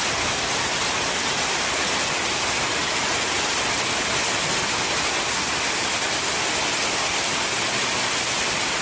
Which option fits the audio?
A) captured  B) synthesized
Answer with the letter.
A